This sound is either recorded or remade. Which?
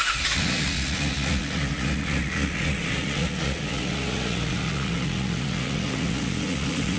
remade